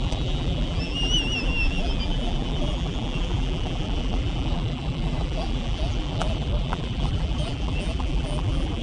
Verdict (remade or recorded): remade